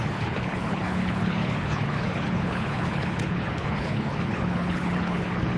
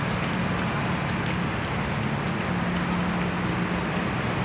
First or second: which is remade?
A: first